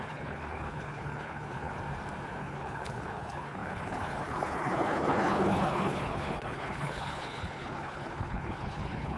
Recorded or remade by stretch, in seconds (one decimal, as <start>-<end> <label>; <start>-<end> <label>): 0.0-1.7 remade; 1.7-2.4 recorded; 2.4-9.2 remade